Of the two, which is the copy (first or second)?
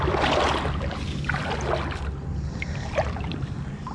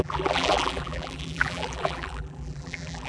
second